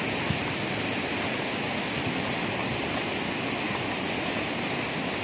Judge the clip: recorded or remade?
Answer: recorded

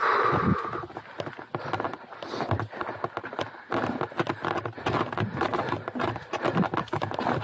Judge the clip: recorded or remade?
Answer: recorded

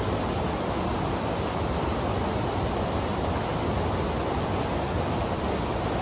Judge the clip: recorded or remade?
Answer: recorded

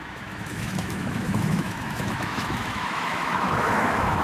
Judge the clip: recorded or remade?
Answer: remade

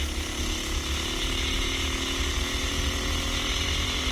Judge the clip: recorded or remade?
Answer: recorded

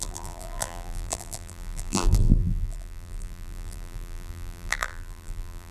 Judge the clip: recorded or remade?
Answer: remade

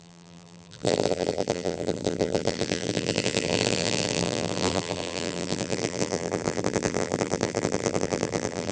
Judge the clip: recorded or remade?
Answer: remade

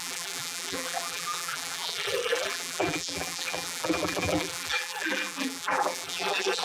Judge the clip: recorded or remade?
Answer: remade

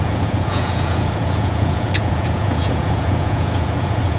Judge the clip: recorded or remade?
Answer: remade